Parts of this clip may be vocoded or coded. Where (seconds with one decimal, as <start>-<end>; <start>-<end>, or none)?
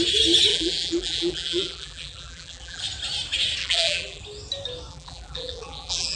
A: 0.5-2.8; 3.6-4.2; 4.9-6.2